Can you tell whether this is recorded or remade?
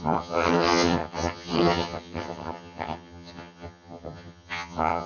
remade